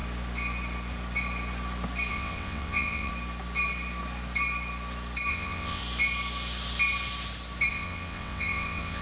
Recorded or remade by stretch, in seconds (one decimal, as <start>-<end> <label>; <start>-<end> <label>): 0.0-2.1 recorded; 2.1-3.1 remade; 3.1-5.3 recorded; 5.3-5.8 remade; 5.8-7.7 recorded; 7.7-9.0 remade